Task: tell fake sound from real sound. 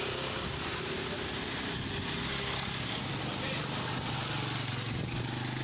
real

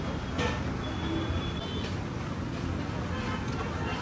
real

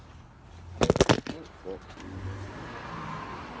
real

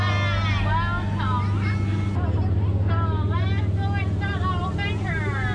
real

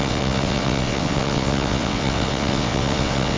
fake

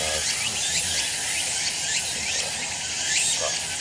real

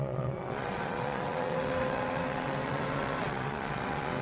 fake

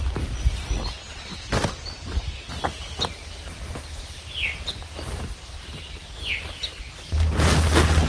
real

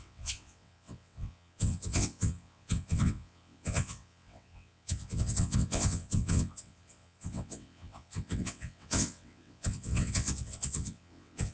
fake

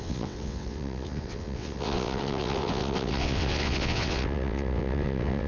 fake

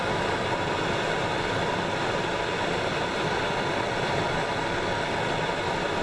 real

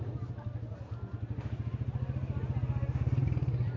real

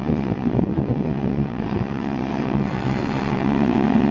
fake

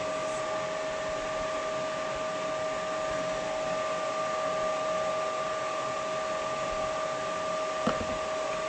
real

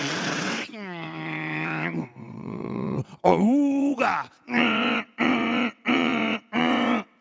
fake